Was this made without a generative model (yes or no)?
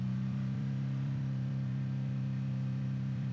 no